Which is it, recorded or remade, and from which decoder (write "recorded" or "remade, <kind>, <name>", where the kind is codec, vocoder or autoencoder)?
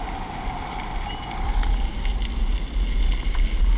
recorded